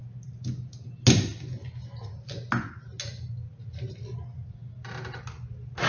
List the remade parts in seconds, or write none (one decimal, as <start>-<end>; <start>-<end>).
none